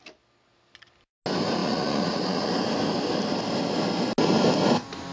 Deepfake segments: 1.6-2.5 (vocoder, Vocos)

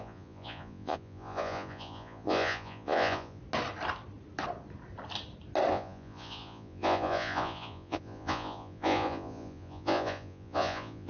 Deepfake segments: 0.0-3.4 (vocoder, Vocos); 5.7-11.1

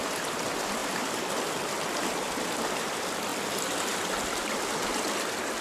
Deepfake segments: none